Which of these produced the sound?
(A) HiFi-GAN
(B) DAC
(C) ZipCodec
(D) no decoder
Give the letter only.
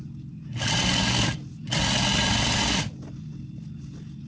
D